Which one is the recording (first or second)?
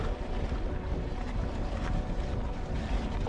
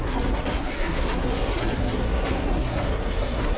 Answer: first